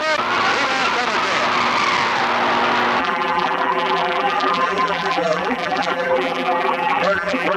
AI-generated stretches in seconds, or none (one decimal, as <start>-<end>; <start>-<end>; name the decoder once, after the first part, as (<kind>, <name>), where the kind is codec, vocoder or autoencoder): 3.0-7.6 (vocoder, BigVGAN v2)